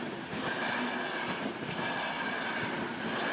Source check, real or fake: real